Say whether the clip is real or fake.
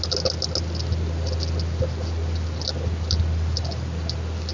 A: real